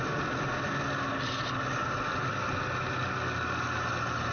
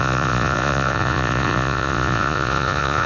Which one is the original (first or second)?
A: first